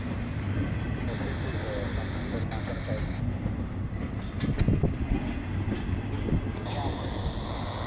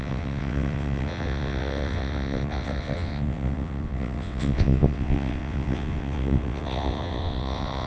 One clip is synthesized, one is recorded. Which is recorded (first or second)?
first